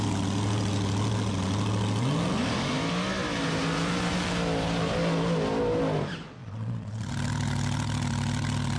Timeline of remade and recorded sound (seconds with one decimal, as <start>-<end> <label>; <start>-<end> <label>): 0.0-6.4 recorded; 6.4-7.0 remade; 7.0-8.8 recorded